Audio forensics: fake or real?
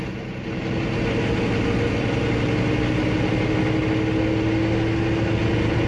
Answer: real